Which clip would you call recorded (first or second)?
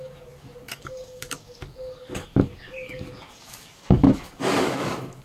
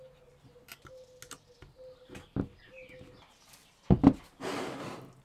second